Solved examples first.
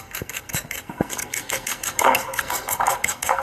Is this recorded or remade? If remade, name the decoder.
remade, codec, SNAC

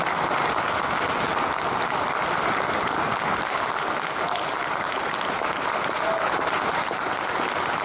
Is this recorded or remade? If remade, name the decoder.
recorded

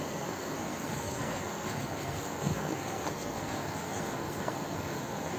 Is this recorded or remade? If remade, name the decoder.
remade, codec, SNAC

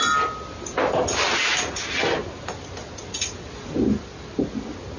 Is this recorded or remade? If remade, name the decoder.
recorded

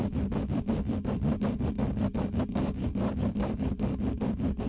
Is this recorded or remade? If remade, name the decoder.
recorded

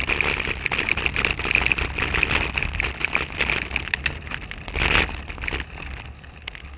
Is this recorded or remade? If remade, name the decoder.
recorded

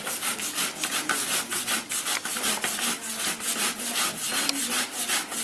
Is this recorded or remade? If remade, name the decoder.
recorded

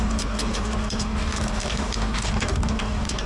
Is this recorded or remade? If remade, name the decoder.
remade, codec, DAC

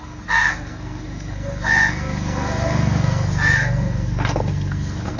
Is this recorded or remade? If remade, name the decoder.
remade, codec, SNAC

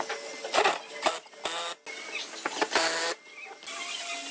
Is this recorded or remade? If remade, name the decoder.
recorded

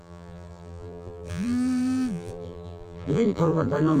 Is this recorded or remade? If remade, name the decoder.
remade, vocoder, BigVGAN v2